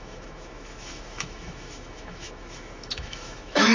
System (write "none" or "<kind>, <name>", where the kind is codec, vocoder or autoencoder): autoencoder, DAC-VAE